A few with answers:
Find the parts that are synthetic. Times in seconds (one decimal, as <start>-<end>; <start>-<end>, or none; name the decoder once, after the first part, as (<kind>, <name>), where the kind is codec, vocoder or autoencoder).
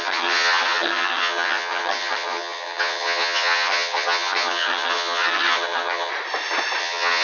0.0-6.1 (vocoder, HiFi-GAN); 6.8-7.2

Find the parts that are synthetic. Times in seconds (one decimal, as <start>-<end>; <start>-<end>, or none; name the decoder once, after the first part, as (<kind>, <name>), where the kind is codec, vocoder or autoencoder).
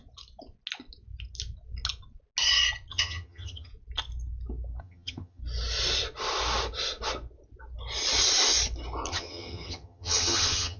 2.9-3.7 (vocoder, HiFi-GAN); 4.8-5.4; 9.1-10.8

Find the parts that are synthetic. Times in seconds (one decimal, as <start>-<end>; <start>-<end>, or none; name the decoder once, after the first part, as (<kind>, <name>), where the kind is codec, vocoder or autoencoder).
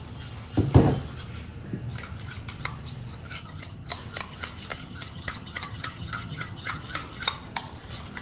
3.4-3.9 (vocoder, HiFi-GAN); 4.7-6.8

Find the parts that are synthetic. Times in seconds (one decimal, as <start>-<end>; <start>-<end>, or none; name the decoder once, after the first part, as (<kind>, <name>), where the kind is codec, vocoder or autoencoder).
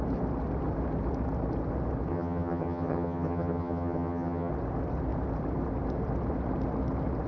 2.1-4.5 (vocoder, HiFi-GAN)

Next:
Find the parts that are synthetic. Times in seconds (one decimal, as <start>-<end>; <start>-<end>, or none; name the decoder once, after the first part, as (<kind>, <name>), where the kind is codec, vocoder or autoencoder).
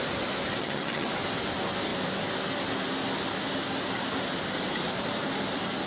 0.6-1.1 (vocoder, HiFi-GAN)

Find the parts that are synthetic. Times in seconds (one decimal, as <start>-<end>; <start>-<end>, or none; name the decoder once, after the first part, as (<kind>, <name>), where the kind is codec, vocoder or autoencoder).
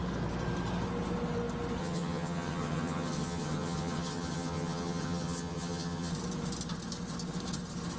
1.8-6.1 (vocoder, HiFi-GAN)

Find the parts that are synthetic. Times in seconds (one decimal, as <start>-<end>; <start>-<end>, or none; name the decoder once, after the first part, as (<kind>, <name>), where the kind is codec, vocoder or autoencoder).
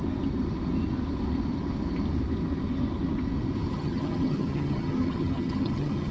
3.7-6.1 (vocoder, HiFi-GAN)